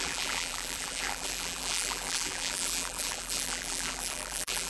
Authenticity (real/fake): fake